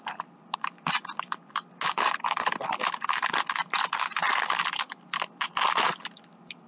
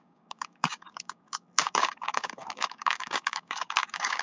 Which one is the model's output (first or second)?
second